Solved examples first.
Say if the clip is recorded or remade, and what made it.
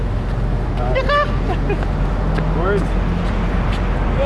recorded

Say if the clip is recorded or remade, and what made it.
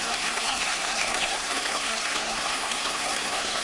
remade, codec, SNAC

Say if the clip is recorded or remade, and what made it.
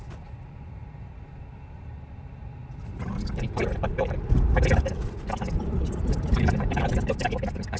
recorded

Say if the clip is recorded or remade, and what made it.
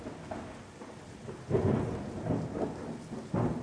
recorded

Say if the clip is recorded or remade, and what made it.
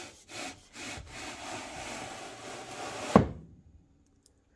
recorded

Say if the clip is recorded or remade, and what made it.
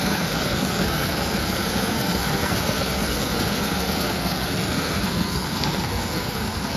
remade, codec, SNAC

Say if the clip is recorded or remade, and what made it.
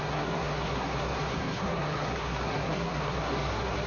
remade, codec, SNAC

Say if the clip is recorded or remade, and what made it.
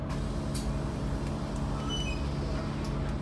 recorded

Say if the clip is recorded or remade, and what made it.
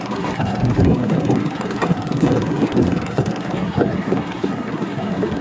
remade, codec, SNAC